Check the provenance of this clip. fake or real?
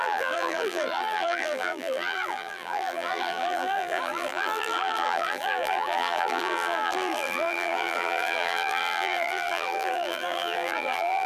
fake